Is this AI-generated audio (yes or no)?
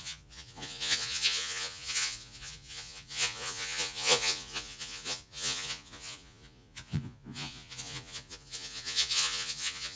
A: yes